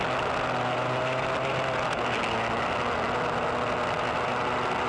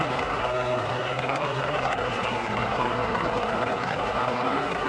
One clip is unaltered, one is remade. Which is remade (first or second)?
second